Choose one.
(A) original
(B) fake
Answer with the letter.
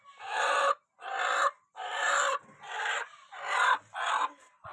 A